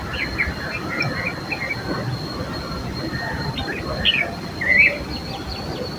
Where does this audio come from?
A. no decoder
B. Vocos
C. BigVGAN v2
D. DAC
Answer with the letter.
A